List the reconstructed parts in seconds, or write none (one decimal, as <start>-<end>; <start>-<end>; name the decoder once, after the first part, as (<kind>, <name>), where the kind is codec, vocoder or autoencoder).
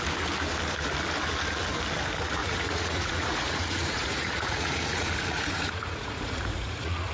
2.4-7.1 (vocoder, Vocos)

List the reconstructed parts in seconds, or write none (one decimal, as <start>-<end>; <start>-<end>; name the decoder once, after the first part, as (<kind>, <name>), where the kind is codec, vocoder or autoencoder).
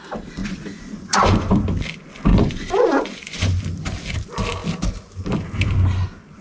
0.4-1.5 (vocoder, Vocos); 2.3-3.6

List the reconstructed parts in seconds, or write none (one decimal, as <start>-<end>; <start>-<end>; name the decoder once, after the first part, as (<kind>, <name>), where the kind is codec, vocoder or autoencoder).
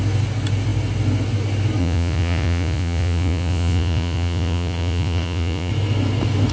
1.8-5.7 (vocoder, Vocos)